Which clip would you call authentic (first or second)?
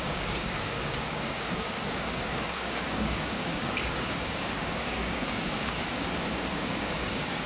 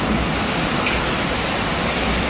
second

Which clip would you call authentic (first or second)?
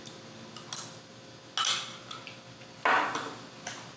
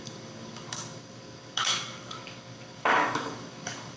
first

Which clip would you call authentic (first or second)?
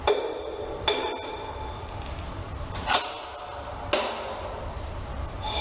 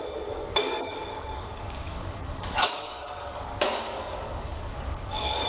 first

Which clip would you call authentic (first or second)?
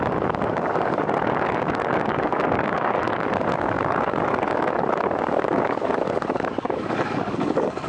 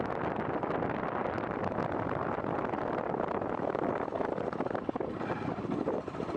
second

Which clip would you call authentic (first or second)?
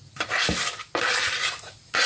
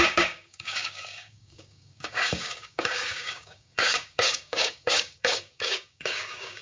first